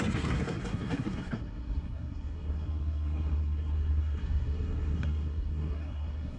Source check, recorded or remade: remade